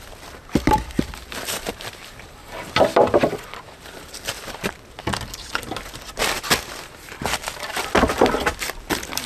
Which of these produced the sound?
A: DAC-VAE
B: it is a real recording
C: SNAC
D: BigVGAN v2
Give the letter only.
D